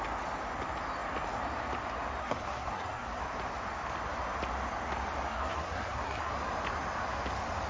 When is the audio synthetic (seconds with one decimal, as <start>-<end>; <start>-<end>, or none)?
2.2-3.2; 5.3-6.3